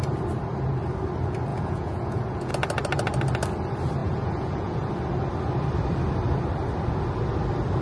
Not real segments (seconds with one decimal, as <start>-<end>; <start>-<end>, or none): 1.5-2.5; 4.0-4.9